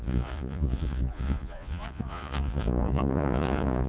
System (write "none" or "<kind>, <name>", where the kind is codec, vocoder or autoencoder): vocoder, Vocos